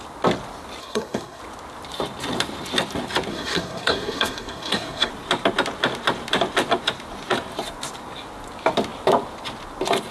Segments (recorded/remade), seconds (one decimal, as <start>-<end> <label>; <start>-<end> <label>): 0.0-0.8 recorded; 0.8-1.4 remade; 1.4-3.3 recorded; 3.3-5.1 remade; 5.1-10.1 recorded